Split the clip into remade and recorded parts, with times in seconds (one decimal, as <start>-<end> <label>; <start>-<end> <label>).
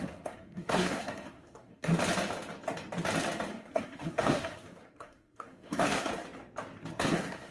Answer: 0.0-1.9 remade; 1.9-3.5 recorded; 3.5-6.1 remade; 6.1-6.9 recorded; 6.9-7.5 remade